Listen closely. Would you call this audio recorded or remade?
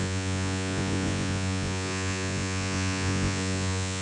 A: remade